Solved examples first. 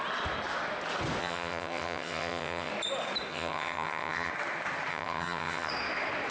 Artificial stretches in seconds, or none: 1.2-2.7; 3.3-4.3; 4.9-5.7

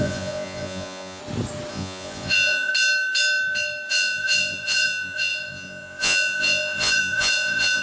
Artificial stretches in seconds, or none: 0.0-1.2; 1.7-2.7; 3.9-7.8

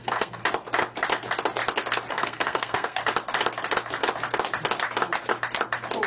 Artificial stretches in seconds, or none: 0.0-0.4; 2.1-3.0

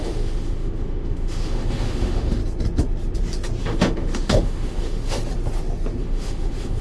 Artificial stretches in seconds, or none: 0.0-2.4; 3.6-5.2; 6.0-6.8